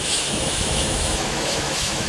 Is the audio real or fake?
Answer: fake